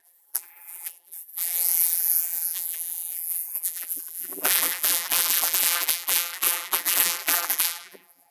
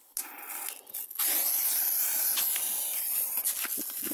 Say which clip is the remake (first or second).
first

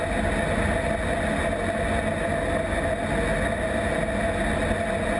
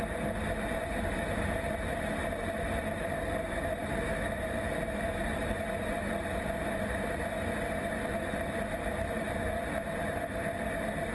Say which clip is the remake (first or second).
second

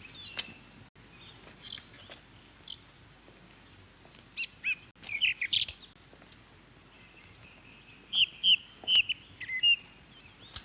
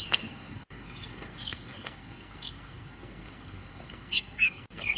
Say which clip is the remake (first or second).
second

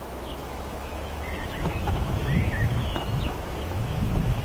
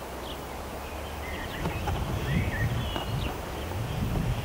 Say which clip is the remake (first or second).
first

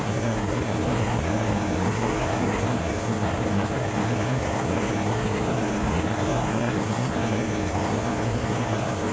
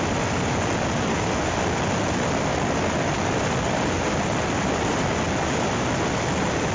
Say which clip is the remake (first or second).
first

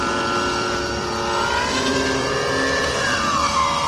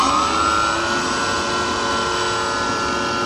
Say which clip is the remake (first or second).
first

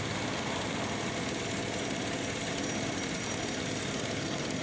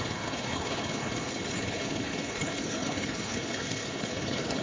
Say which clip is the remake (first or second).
second